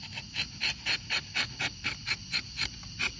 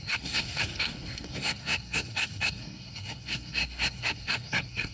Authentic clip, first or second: first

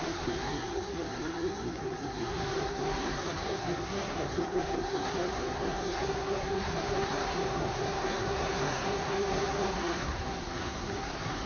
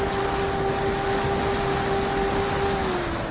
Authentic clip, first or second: second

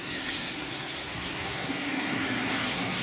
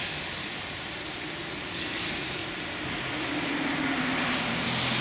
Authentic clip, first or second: second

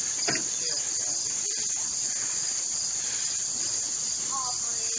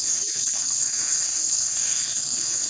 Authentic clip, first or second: first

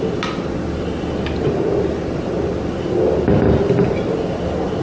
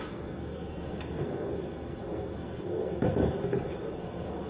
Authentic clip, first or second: first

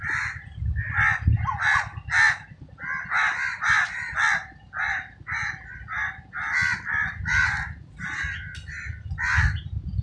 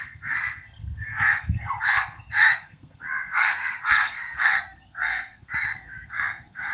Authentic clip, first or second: first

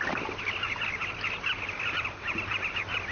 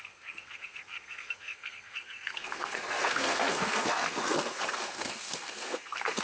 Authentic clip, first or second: first